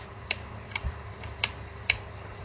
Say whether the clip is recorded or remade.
remade